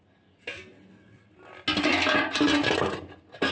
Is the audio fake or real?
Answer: real